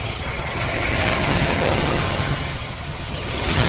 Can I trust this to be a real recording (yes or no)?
no